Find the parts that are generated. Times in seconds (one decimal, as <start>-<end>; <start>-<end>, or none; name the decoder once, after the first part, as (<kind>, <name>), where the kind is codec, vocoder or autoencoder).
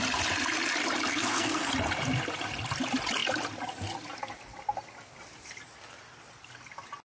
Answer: 1.1-1.7 (codec, SNAC)